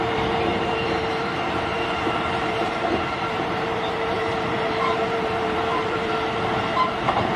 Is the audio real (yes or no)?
no